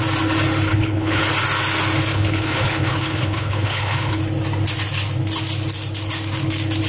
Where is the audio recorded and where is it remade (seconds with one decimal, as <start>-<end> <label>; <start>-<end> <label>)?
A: 0.0-0.7 recorded; 0.7-1.2 remade; 1.2-2.1 recorded; 2.1-4.2 remade; 4.2-6.9 recorded

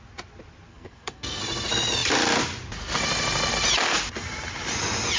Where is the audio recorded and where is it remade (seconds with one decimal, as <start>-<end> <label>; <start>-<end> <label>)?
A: 0.0-0.7 recorded; 0.7-1.4 remade; 1.4-5.2 recorded

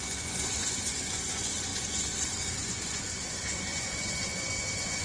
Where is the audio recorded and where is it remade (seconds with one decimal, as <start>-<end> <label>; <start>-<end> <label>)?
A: 0.0-5.0 remade